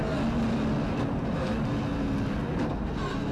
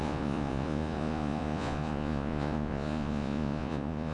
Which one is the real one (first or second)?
first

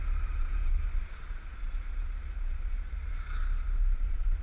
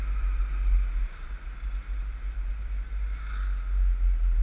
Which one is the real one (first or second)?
second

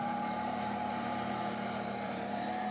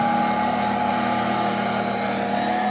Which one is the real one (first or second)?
second